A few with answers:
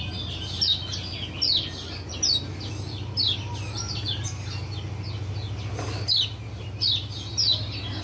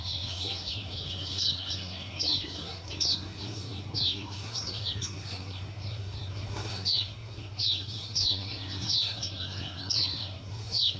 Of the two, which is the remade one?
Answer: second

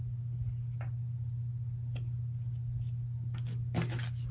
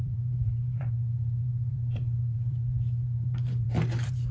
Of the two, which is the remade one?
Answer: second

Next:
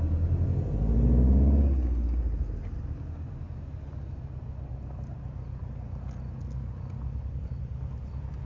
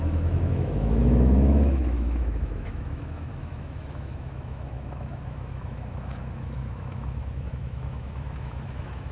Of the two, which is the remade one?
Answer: second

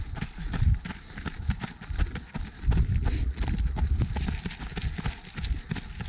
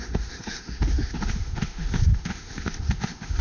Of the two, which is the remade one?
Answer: second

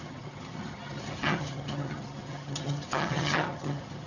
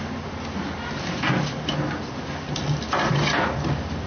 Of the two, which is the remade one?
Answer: first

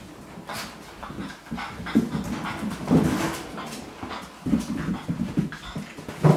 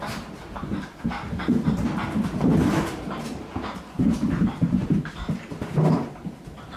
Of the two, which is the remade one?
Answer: second